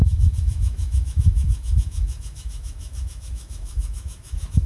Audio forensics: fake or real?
fake